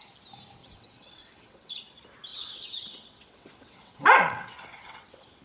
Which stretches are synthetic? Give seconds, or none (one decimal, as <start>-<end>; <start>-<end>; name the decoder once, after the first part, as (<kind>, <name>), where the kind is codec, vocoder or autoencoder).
0.6-1.8 (vocoder, WaveNeXt); 2.3-5.4